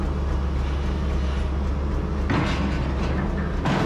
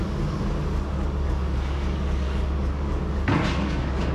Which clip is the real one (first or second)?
first